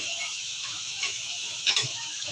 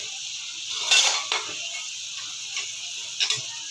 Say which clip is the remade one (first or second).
first